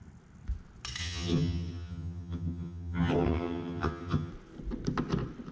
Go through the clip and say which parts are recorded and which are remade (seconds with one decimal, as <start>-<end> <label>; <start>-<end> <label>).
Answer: 0.0-1.0 recorded; 1.0-4.3 remade; 4.3-5.5 recorded